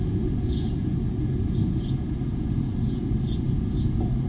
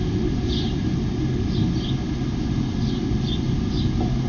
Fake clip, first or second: first